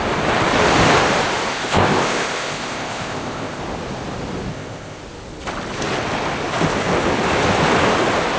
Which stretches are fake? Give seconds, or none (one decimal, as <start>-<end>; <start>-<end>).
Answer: 1.5-3.6; 4.5-5.0